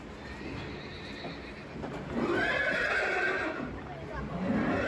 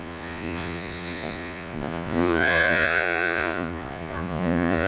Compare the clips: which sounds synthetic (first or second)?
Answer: second